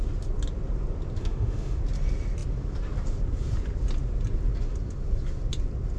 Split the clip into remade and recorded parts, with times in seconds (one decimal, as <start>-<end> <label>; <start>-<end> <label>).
0.0-1.2 recorded; 1.2-1.8 remade; 1.8-6.0 recorded